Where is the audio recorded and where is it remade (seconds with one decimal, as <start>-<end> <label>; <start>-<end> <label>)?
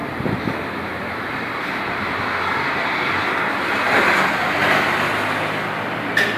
0.0-6.4 recorded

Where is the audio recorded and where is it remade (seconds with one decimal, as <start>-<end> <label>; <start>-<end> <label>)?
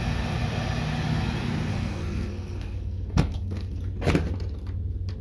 0.0-1.7 recorded; 1.7-3.8 remade; 3.8-5.2 recorded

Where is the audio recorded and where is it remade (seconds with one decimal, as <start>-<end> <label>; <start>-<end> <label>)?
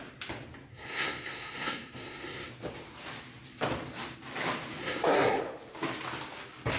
0.0-0.7 recorded; 0.7-2.5 remade; 2.5-4.8 recorded; 4.8-5.4 remade; 5.4-6.8 recorded